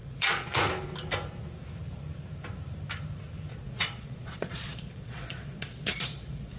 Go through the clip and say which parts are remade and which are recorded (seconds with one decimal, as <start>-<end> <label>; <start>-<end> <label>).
0.0-0.6 remade; 0.6-3.5 recorded; 3.5-6.6 remade